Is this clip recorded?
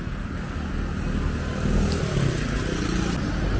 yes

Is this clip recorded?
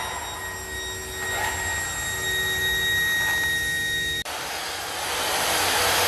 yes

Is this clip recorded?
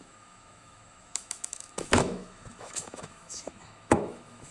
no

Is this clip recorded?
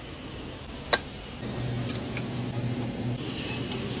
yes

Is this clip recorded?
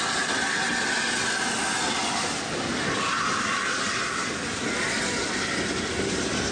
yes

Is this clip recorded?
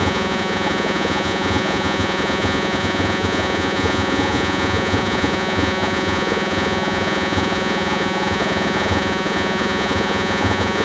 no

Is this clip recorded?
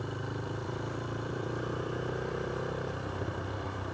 no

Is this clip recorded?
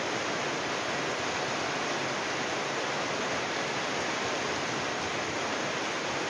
yes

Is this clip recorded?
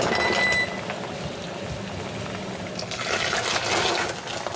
yes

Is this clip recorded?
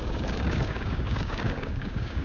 no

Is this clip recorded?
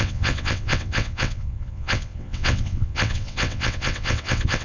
no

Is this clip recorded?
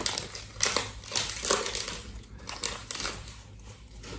yes